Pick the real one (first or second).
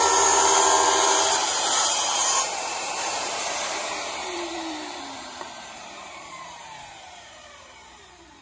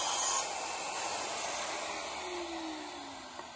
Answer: second